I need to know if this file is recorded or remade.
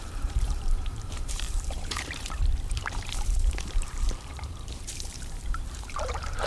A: remade